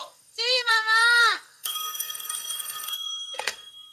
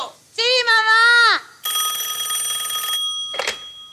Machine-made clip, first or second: first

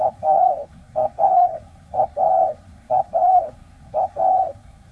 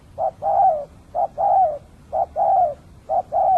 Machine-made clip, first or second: first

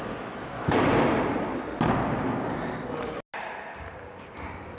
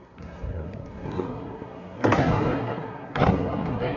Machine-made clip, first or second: second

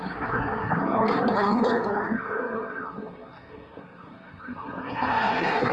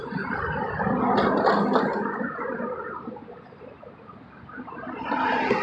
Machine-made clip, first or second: first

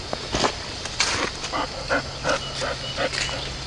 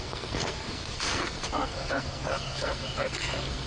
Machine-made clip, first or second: second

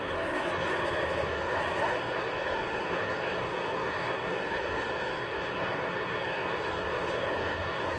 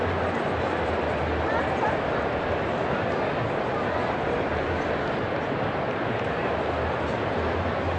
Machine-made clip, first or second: first